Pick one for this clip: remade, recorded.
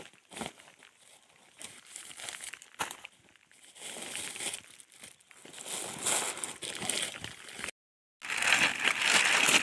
recorded